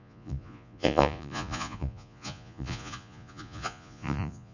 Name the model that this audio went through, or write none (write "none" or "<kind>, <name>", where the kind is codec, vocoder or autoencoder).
vocoder, Vocos